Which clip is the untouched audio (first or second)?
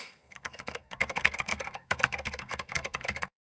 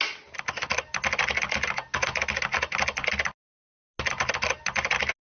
second